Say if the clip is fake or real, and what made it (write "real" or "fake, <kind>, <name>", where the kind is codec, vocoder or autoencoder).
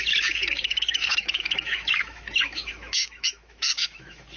fake, autoencoder, DAC-VAE